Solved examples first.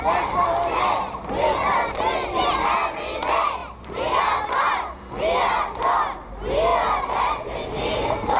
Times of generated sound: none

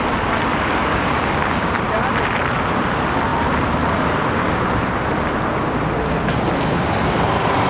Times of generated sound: 0.8-1.7

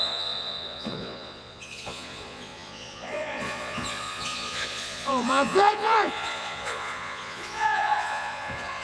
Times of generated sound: 0.0-8.8

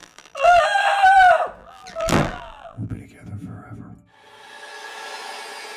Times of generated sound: 0.0-0.6; 1.6-3.0

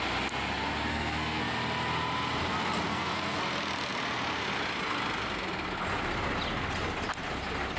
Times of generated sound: 0.9-1.4; 2.9-3.4